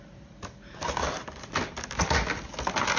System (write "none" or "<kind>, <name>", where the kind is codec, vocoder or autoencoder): none